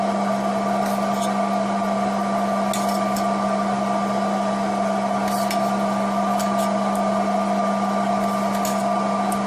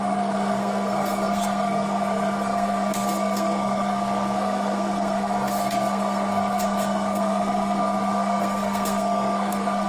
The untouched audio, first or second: first